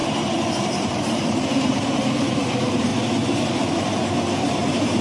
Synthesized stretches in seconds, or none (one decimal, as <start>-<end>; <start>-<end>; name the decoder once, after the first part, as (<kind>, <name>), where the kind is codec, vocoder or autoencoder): 0.6-2.9 (vocoder, BigVGAN v2); 4.4-5.0